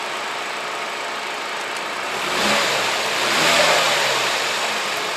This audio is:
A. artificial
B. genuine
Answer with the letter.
A